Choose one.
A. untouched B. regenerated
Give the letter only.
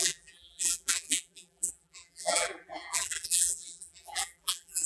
B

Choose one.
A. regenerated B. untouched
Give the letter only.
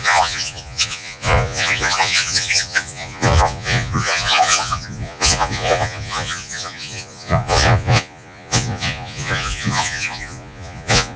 A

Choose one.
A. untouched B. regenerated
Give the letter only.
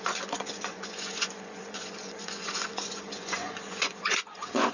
B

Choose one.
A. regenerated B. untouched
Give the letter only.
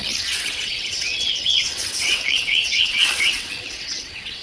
A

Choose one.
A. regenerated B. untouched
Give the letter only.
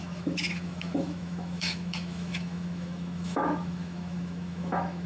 A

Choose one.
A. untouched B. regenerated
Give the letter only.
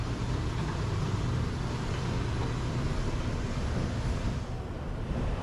A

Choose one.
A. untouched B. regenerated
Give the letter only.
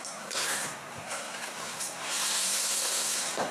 B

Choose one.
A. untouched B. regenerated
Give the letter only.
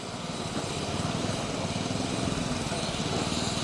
A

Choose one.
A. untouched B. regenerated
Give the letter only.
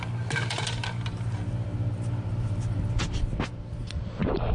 A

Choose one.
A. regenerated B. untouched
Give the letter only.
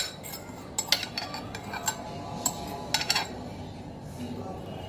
B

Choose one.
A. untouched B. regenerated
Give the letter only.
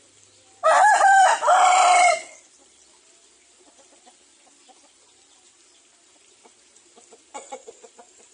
B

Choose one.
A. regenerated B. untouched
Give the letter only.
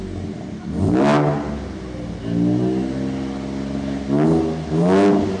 B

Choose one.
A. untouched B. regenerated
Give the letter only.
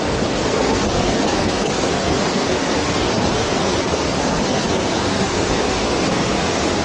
B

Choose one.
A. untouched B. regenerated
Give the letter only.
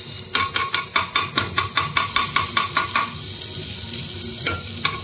A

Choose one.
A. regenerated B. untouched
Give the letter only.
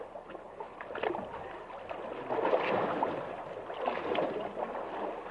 B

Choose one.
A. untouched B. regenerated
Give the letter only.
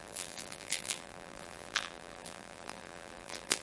B